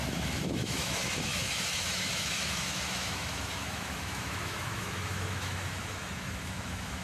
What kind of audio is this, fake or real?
fake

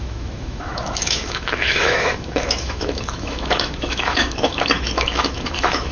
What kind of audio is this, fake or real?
fake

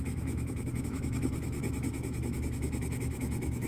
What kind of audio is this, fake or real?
fake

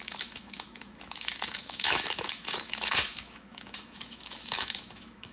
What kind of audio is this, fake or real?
fake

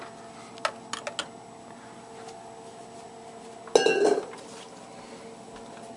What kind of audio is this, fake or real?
real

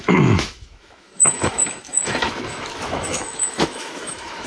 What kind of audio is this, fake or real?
fake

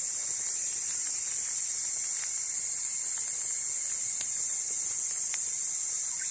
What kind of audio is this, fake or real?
real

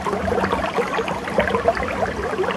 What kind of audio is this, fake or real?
real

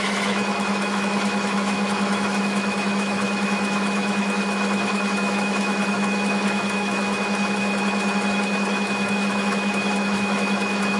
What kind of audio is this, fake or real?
fake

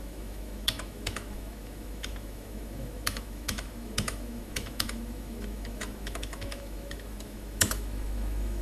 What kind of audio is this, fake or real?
fake